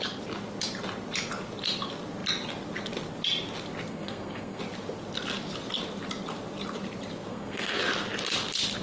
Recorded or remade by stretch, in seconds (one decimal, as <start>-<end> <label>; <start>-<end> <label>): 0.0-3.9 recorded; 3.9-4.6 remade; 4.6-7.3 recorded; 7.3-7.8 remade; 7.8-8.8 recorded